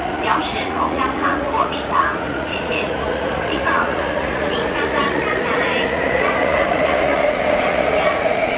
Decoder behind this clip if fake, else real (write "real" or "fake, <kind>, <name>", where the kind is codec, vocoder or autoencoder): fake, vocoder, Vocos